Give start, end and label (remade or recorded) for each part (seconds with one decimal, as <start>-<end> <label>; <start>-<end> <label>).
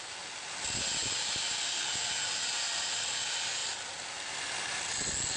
0.0-5.4 recorded